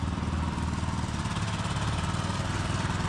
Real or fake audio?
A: real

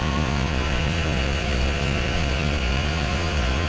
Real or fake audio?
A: fake